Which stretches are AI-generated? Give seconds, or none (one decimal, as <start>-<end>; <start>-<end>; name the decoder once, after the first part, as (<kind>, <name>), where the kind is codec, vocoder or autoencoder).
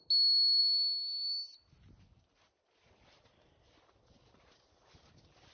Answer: none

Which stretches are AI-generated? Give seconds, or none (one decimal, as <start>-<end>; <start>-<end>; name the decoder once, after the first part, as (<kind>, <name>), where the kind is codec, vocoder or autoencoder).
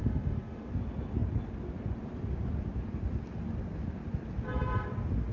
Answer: 0.0-0.7 (autoencoder, DAC-VAE)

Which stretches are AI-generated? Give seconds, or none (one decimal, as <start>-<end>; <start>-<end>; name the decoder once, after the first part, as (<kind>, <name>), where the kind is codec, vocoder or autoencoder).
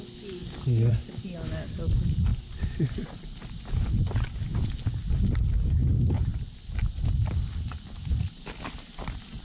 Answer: none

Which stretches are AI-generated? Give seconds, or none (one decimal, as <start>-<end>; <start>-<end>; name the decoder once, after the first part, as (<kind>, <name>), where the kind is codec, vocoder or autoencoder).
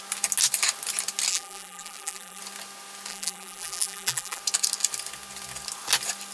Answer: 1.3-2.4 (vocoder, BigVGAN v2); 3.1-4.4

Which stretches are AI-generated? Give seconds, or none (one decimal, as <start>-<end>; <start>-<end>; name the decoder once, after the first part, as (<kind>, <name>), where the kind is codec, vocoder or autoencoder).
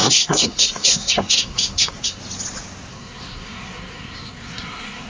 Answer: 0.0-2.2 (codec, SNAC); 2.9-5.1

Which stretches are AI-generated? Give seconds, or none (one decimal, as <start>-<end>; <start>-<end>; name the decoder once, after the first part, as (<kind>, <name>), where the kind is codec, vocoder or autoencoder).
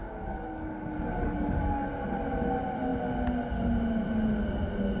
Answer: 0.0-1.9 (codec, DAC)